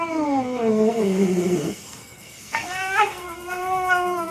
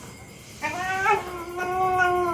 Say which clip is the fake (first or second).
first